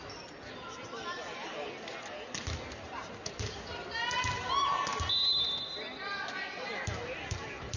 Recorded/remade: recorded